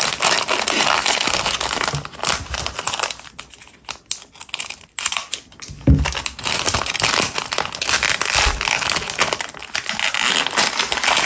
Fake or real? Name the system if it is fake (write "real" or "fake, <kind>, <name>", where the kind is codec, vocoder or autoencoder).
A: real